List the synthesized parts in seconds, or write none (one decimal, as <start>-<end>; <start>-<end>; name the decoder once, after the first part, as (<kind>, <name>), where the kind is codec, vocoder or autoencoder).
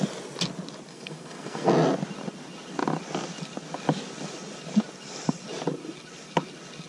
0.9-1.7 (codec, SNAC)